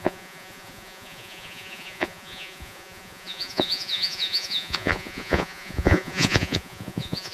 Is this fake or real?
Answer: fake